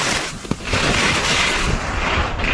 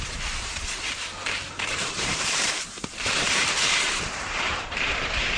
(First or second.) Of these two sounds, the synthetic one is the second